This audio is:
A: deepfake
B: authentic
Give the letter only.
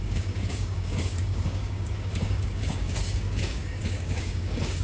A